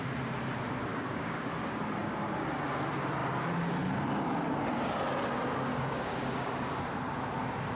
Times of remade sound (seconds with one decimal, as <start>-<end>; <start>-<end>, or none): 0.9-1.5; 5.7-6.5